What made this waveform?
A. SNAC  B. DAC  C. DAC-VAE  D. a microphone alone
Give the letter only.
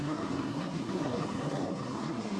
A